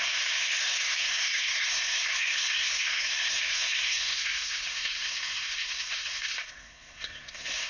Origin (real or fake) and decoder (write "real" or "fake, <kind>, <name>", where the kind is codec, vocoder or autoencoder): fake, codec, SNAC